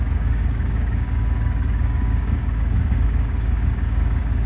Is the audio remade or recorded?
remade